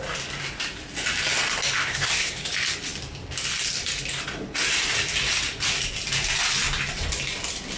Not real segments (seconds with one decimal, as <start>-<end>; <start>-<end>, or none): 1.8-2.5